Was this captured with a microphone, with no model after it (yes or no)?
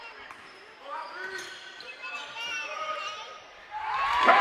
no